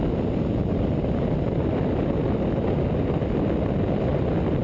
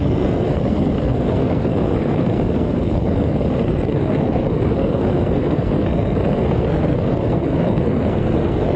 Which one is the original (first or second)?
first